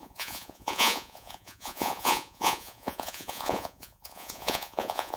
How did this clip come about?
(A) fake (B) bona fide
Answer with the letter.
A